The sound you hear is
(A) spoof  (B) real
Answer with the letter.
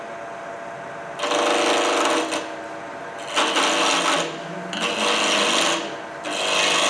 B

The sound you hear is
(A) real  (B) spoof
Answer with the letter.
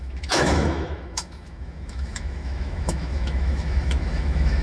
B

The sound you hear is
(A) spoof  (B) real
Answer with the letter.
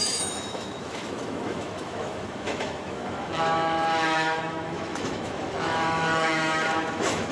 A